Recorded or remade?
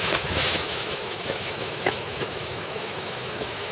remade